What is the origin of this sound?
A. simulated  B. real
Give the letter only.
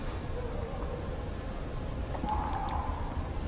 B